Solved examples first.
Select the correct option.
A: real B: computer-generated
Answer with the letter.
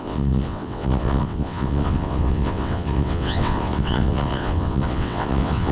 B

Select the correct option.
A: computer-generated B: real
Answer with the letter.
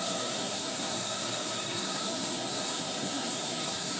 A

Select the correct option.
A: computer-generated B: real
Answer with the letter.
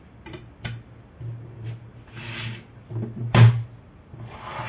B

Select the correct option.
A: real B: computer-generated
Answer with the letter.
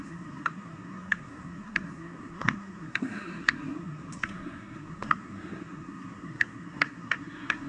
B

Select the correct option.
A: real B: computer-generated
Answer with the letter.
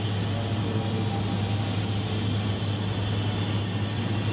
A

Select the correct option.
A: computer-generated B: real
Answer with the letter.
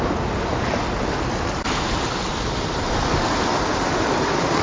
B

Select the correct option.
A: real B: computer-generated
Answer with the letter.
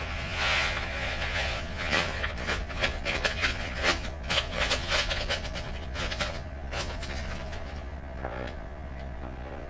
B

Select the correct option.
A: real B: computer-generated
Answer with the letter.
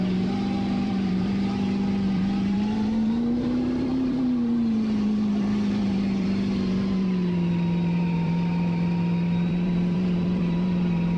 B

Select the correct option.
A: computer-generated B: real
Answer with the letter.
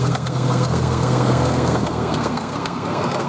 A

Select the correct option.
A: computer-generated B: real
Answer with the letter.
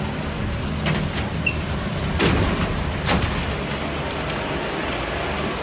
B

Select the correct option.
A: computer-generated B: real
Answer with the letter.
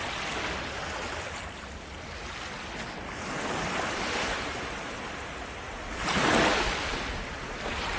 B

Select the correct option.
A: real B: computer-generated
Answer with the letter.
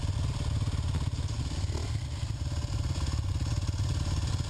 A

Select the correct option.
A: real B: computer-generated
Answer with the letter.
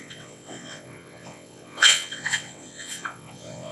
B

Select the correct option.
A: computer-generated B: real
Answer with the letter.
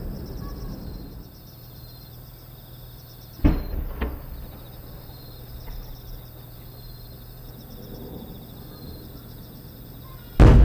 B